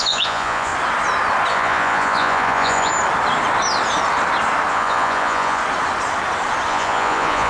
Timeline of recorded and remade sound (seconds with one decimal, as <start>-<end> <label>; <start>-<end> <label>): 0.0-0.7 remade; 0.7-1.5 recorded; 1.5-2.9 remade; 2.9-4.7 recorded; 4.7-5.6 remade; 5.6-6.7 recorded; 6.7-7.5 remade